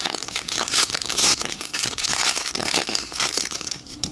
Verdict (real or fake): fake